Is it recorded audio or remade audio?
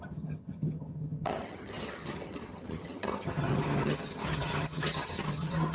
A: remade